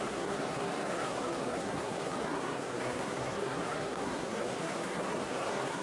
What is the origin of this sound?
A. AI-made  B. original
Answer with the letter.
A